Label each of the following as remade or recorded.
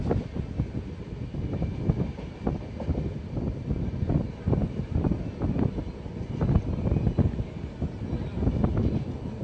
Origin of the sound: recorded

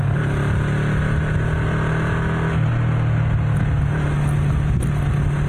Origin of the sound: recorded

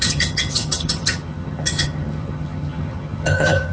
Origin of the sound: remade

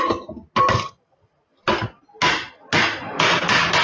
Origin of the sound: recorded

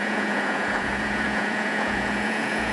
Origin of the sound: remade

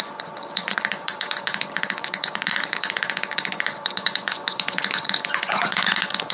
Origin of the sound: remade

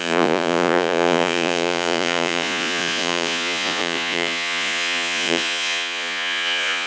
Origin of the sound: remade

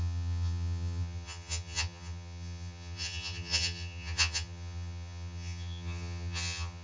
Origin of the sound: remade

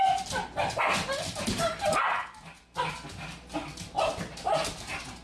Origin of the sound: recorded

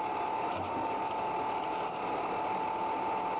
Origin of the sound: recorded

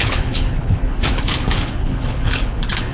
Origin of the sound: remade